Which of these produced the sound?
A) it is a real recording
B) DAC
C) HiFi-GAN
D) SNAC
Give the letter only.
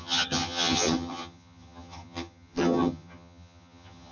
C